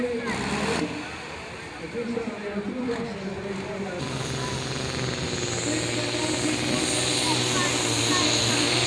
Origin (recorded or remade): recorded